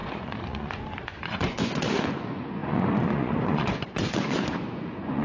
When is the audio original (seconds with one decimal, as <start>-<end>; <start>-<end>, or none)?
none

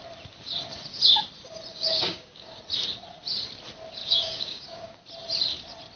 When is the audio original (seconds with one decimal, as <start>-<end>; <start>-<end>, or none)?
0.0-1.7; 2.6-4.0; 5.0-6.0

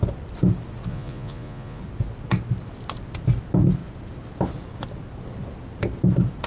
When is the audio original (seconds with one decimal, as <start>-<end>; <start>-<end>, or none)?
0.0-0.9; 1.8-6.5